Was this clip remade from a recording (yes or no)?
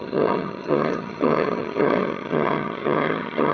yes